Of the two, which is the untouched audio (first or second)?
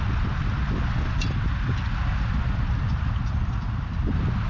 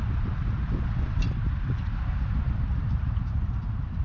first